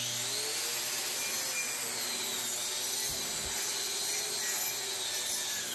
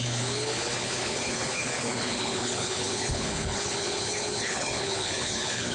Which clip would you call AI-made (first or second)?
second